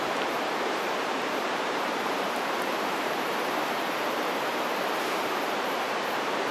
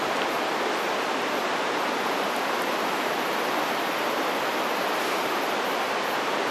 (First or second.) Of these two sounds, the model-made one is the first